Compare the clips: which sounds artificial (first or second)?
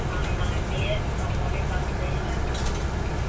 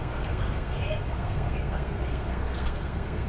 second